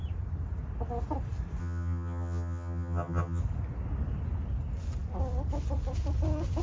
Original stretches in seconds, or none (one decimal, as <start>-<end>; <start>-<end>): 0.0-1.6; 3.4-6.6